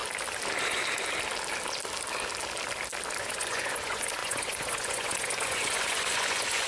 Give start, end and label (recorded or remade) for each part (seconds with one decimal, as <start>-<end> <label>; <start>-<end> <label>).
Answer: 0.0-3.2 recorded; 3.2-6.7 remade